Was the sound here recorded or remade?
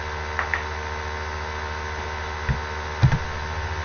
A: recorded